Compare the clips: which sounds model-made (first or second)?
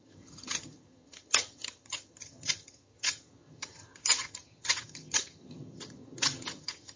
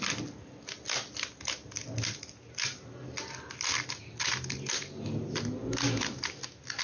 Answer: first